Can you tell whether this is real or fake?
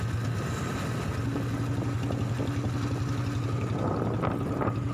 real